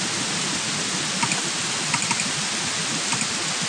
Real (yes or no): yes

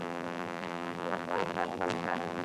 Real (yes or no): no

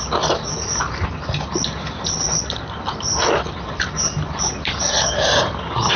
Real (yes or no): yes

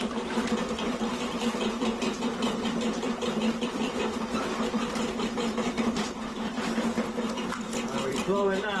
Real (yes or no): no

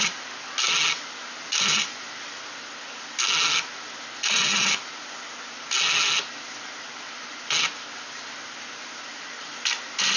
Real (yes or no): yes